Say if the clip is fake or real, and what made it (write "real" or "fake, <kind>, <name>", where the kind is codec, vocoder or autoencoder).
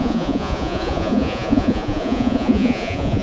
fake, vocoder, Vocos